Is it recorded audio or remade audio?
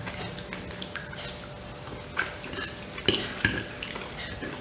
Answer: recorded